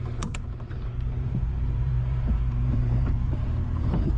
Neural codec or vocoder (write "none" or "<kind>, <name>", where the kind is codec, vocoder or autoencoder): vocoder, BigVGAN v2